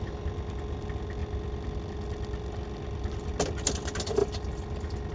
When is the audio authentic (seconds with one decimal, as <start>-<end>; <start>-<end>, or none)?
0.0-5.1

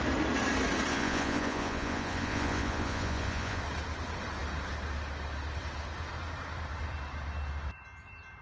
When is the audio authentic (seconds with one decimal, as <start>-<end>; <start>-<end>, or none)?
0.0-0.9; 3.6-8.4

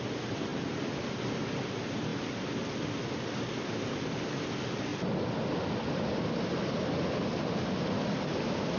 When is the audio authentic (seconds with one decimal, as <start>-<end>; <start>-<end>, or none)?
0.0-8.8

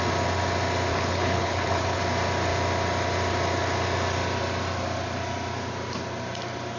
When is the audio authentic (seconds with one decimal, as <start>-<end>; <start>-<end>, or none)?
0.0-0.9; 2.0-6.8